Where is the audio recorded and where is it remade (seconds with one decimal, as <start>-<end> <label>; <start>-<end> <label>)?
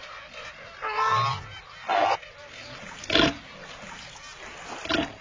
0.0-5.2 recorded